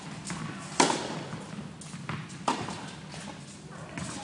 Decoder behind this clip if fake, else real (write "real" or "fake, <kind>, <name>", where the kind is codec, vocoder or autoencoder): real